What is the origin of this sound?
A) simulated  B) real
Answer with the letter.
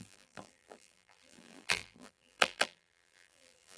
A